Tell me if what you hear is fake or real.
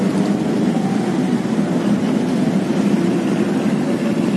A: real